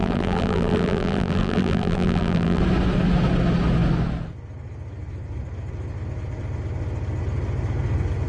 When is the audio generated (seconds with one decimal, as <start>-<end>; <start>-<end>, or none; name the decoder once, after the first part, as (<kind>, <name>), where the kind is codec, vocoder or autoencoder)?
0.0-2.6 (vocoder, BigVGAN v2)